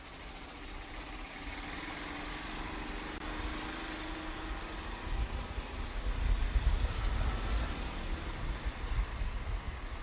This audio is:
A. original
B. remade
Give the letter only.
A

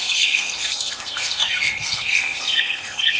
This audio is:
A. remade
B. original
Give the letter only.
A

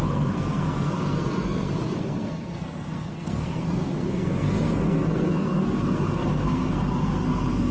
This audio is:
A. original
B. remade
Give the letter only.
B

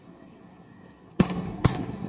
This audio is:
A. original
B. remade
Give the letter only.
B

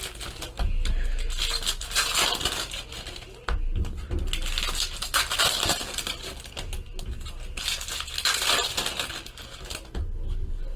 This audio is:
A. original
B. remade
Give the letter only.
A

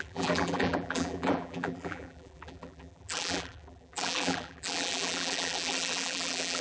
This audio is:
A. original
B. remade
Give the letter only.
B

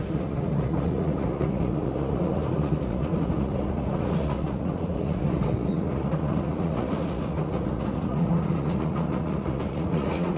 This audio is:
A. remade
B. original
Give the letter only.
A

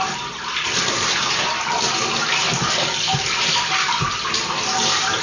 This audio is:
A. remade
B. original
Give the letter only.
B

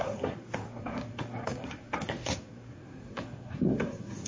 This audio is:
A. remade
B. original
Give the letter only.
A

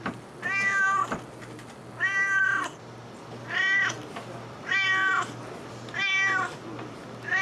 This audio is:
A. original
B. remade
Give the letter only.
A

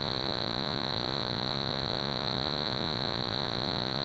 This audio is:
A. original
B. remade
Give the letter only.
B